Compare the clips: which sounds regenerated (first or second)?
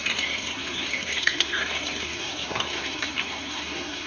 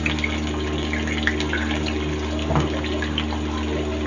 first